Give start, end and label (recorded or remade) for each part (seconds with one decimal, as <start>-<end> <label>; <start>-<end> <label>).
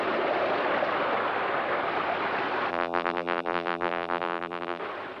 0.0-2.7 recorded; 2.7-4.8 remade; 4.8-5.2 recorded